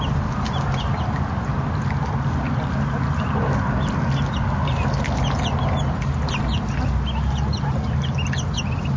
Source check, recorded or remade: recorded